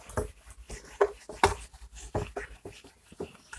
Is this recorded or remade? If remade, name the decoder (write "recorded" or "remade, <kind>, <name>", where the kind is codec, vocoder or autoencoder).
recorded